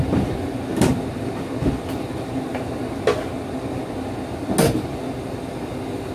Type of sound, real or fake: real